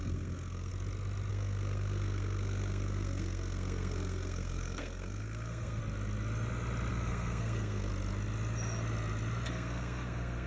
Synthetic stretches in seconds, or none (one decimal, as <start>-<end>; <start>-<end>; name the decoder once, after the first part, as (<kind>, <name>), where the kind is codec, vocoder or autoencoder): 0.0-0.7 (codec, SNAC); 1.3-5.8; 6.9-7.9; 9.5-10.5